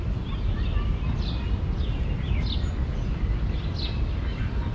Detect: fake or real real